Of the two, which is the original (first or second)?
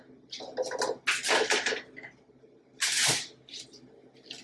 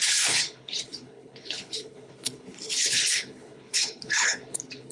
first